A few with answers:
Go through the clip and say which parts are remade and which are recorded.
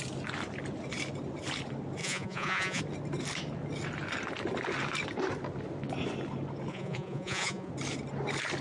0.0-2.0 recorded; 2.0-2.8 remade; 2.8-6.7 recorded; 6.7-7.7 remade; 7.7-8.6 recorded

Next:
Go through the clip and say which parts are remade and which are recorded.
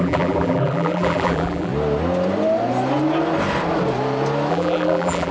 0.0-1.7 remade; 1.7-4.5 recorded; 4.5-5.3 remade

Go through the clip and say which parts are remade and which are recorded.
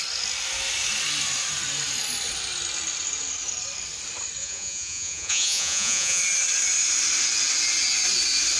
0.0-4.4 recorded; 4.4-6.2 remade; 6.2-8.6 recorded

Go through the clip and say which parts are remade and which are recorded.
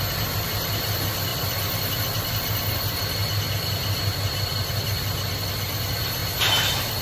0.0-7.0 recorded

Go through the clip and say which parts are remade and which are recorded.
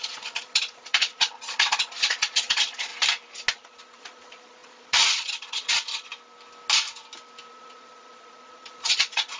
0.0-2.9 remade; 2.9-3.5 recorded; 3.5-6.1 remade; 6.1-7.5 recorded; 7.5-9.4 remade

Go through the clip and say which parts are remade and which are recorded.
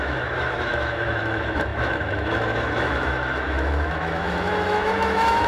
0.0-5.5 remade